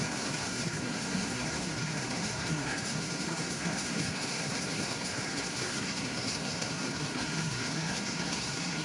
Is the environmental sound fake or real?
fake